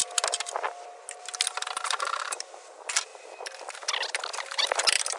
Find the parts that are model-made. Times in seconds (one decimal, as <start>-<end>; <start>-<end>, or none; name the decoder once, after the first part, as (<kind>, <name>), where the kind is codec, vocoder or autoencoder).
1.7-3.1 (vocoder, BigVGAN v2); 4.3-5.2